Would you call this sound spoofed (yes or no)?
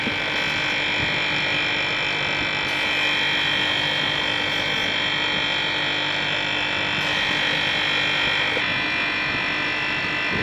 no